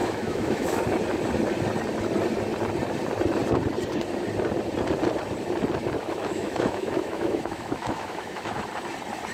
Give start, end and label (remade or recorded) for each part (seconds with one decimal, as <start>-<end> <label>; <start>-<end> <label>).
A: 0.0-0.8 remade; 0.8-6.0 recorded; 6.0-8.6 remade; 8.6-9.3 recorded

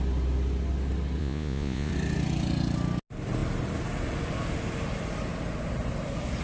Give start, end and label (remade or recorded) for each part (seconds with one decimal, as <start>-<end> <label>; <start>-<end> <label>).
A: 0.0-1.2 recorded; 1.2-1.9 remade; 1.9-6.4 recorded

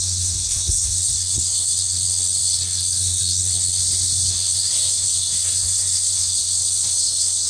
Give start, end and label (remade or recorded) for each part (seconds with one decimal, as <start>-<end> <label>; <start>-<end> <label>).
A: 0.0-3.8 remade; 3.8-4.3 recorded; 4.3-7.5 remade

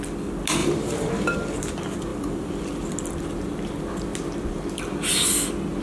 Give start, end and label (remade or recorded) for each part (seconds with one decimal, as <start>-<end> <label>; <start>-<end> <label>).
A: 0.0-0.6 recorded; 0.6-1.6 remade; 1.6-2.1 recorded; 2.1-2.6 remade; 2.6-5.8 recorded

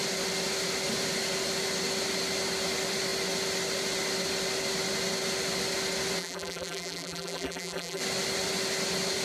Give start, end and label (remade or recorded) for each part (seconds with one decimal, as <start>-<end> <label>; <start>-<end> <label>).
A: 0.0-6.2 recorded; 6.2-8.0 remade; 8.0-9.2 recorded